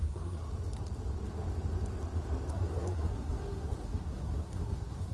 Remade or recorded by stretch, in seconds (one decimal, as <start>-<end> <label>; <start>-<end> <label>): 0.0-0.4 remade; 0.4-2.5 recorded; 2.5-5.1 remade

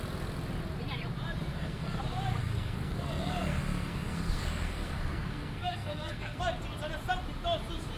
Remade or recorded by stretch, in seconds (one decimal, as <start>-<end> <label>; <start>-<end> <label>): 0.0-1.5 recorded; 1.5-2.0 remade; 2.0-2.4 recorded; 2.4-6.4 remade; 6.4-8.0 recorded